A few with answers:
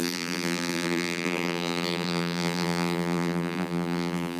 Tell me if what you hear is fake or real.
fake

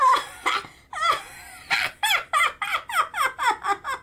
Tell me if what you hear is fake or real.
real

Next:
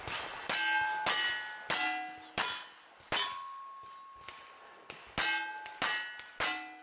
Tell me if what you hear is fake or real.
real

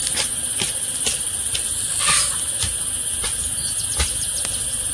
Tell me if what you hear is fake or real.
real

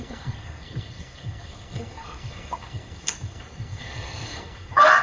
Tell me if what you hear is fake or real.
fake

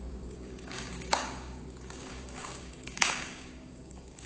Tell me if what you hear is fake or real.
fake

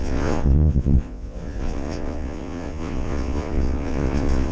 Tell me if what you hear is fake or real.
fake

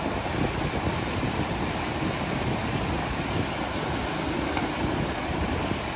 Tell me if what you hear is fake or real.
real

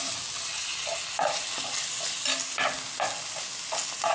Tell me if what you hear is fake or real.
real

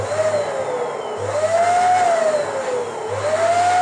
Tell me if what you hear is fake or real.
real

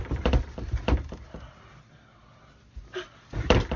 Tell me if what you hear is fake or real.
real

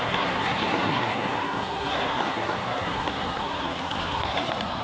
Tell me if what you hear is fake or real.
fake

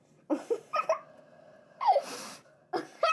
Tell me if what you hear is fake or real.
real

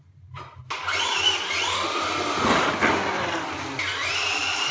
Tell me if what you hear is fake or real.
real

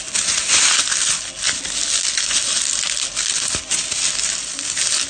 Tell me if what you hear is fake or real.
real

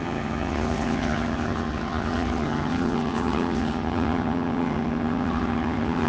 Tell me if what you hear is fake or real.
fake